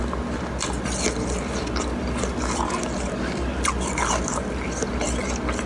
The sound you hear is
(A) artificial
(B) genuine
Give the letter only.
B